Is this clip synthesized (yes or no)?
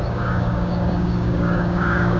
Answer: yes